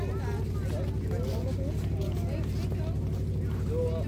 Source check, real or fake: real